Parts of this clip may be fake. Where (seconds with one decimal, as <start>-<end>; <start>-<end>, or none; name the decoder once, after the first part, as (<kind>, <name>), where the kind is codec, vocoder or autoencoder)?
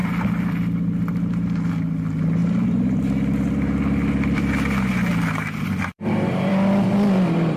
0.0-1.7 (vocoder, BigVGAN v2); 2.4-6.5